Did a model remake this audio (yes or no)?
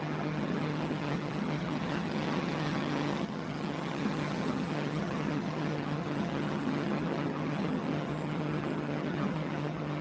yes